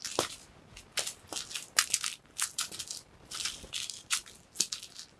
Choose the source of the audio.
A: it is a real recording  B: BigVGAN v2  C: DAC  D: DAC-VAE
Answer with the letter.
A